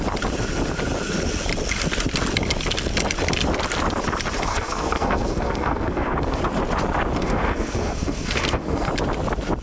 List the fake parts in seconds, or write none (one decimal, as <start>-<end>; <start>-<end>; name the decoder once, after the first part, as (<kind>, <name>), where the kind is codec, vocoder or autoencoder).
4.5-6.4 (codec, SNAC); 7.2-8.9